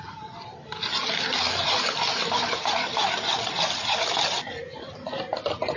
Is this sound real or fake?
real